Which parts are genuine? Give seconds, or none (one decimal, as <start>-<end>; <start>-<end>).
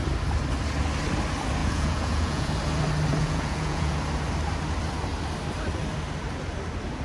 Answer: 0.0-1.6; 2.5-3.2; 4.0-7.0